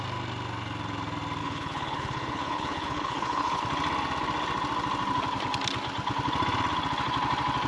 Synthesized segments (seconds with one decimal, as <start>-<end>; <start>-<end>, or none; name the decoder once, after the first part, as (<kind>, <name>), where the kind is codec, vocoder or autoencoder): 1.4-3.6 (codec, HILCodec)